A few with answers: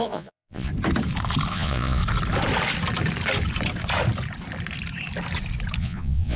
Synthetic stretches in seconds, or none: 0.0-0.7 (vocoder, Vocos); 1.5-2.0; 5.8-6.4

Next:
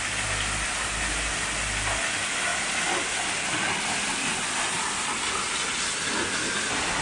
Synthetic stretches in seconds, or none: none

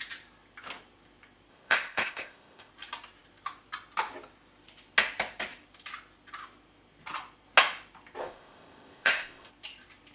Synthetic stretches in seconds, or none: 1.5-2.7 (codec, ZipCodec); 8.2-9.5

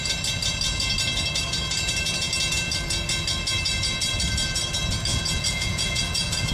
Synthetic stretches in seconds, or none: 5.1-6.5 (vocoder, Vocos)